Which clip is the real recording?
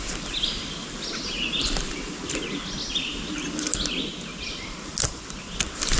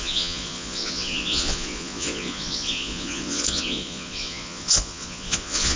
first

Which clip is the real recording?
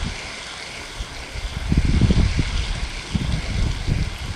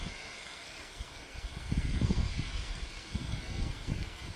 first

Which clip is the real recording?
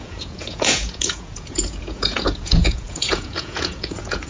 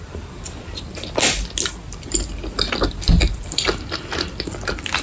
second